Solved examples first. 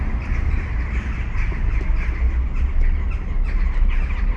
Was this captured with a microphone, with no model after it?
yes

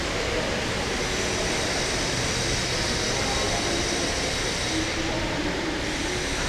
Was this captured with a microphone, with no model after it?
yes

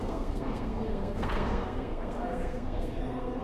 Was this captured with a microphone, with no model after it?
no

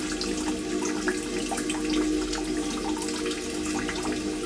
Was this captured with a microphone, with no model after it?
yes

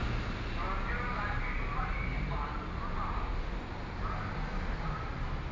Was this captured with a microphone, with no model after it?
yes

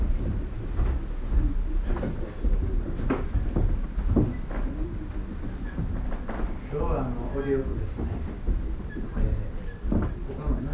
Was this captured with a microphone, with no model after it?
yes